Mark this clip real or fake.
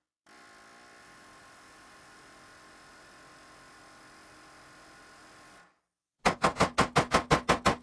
real